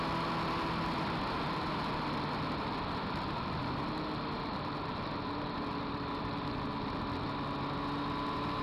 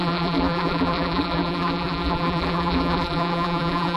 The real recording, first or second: first